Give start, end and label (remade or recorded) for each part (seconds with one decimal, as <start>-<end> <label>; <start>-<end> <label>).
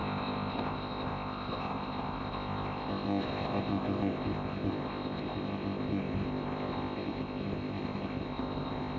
0.0-9.0 remade